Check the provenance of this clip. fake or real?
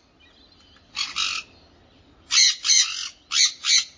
real